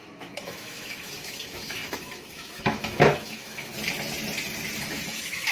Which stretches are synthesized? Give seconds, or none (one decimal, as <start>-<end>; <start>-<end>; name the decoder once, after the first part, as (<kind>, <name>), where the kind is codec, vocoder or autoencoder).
0.0-3.7 (autoencoder, DAC-VAE); 4.8-5.5